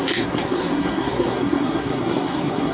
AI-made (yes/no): yes